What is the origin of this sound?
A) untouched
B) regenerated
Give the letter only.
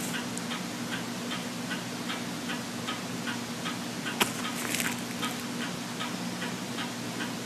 A